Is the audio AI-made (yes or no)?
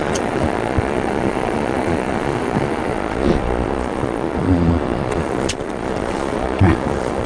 yes